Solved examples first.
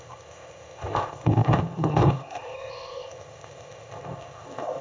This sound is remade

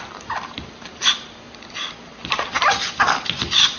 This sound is recorded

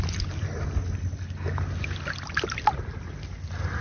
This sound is recorded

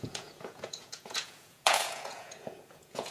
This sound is remade